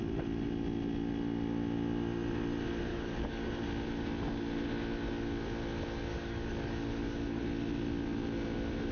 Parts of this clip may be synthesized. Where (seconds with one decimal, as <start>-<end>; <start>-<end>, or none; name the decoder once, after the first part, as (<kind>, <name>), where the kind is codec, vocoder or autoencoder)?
2.9-3.5 (codec, DAC); 6.1-7.4